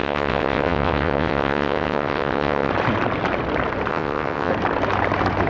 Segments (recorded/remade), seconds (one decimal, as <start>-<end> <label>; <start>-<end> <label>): 0.0-2.7 remade; 2.7-3.9 recorded; 3.9-4.5 remade; 4.5-5.5 recorded